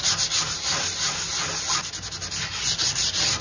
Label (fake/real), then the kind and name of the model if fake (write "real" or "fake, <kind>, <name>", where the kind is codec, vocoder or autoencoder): real